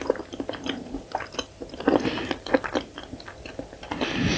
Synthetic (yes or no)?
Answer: no